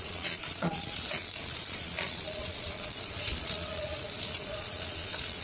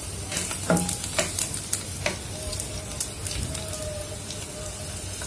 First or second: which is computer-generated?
first